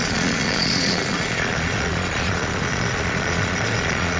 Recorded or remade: remade